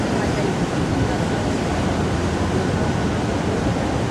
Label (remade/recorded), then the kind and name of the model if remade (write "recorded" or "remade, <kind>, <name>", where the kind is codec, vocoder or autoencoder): recorded